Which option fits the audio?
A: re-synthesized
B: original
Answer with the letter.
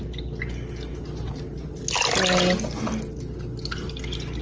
B